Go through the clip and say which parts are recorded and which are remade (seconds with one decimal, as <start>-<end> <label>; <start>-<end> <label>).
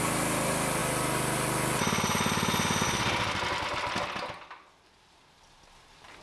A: 0.0-6.2 recorded